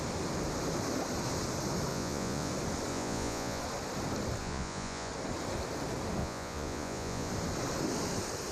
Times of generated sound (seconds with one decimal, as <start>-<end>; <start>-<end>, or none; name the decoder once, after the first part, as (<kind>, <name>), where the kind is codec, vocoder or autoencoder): 1.9-2.5 (vocoder, Vocos); 2.9-3.6; 4.4-5.1; 6.2-7.3